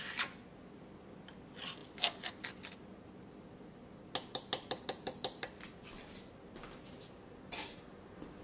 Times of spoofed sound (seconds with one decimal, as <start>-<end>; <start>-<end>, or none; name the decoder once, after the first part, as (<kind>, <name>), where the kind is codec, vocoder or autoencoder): none